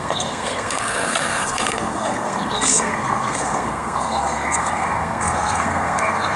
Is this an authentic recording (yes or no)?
no